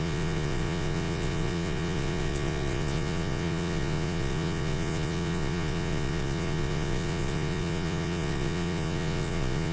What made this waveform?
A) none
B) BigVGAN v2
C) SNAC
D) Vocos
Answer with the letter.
D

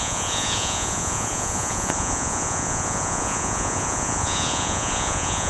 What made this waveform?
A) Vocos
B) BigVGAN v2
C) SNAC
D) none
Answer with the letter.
A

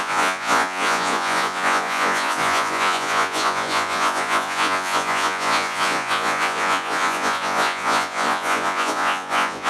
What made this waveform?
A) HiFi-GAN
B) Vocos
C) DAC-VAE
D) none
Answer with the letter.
B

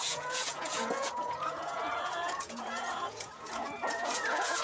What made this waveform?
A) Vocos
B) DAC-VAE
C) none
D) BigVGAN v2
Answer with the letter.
A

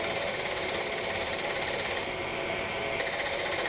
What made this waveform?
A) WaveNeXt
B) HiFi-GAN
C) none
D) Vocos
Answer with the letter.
C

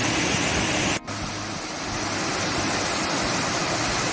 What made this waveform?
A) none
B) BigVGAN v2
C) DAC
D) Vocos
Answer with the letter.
A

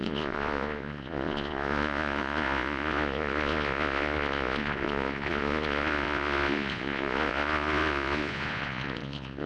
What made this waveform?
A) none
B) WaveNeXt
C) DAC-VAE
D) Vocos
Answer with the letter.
D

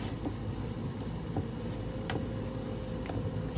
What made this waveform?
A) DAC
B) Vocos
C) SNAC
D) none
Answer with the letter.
D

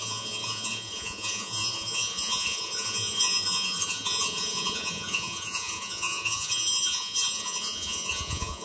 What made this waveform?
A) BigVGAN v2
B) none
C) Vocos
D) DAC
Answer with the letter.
C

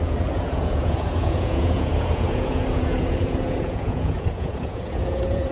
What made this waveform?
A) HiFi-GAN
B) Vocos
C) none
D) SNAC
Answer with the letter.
B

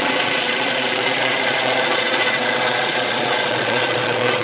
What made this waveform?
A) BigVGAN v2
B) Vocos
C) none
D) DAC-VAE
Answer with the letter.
B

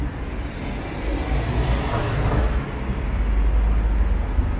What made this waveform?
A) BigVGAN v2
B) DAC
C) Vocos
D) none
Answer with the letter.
D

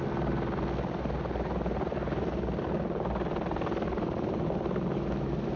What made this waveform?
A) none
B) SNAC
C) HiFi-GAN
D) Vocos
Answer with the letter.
A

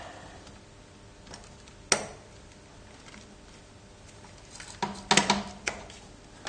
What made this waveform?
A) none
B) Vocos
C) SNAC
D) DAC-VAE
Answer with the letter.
A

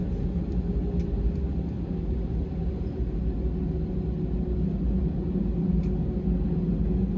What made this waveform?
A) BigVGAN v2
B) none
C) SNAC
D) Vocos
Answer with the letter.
B